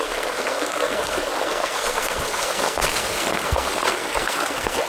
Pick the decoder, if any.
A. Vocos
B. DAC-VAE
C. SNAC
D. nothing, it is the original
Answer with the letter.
C